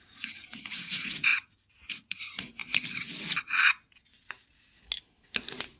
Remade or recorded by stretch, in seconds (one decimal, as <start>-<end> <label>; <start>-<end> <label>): 0.0-2.6 remade; 2.6-5.8 recorded